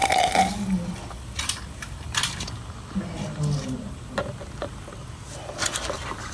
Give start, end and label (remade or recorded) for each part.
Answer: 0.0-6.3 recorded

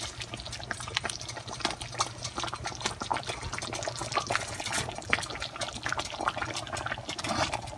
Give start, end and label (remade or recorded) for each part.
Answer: 0.0-7.8 recorded

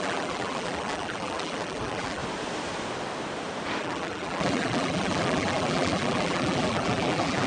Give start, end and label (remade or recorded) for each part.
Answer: 0.0-2.2 remade; 2.2-3.8 recorded; 3.8-7.5 remade

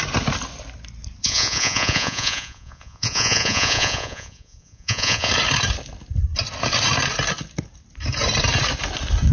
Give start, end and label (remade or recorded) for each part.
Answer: 0.0-1.2 recorded; 1.2-5.3 remade; 5.3-9.3 recorded

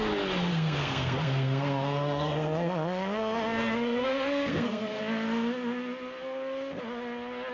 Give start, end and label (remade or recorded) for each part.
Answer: 0.0-0.5 recorded; 0.5-5.0 remade; 5.0-7.5 recorded

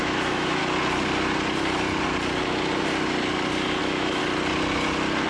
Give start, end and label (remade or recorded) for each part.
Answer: 0.0-0.6 remade; 0.6-3.8 recorded; 3.8-4.2 remade; 4.2-5.3 recorded

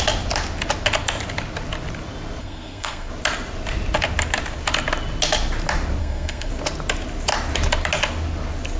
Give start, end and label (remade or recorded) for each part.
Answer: 0.0-2.4 recorded; 2.4-3.1 remade; 3.1-6.0 recorded; 6.0-6.5 remade; 6.5-8.8 recorded

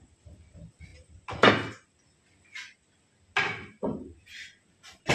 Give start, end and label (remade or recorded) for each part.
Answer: 0.0-3.9 recorded; 3.9-5.1 remade